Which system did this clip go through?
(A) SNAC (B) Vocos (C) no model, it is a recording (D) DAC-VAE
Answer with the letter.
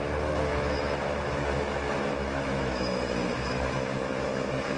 D